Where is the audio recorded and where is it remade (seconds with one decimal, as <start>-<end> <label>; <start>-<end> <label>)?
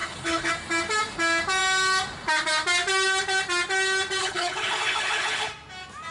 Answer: 0.0-0.5 remade; 0.5-4.2 recorded; 4.2-5.5 remade; 5.5-6.1 recorded